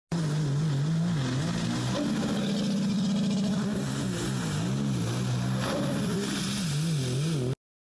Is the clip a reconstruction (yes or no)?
no